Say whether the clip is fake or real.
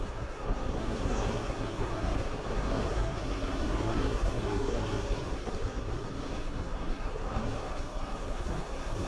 fake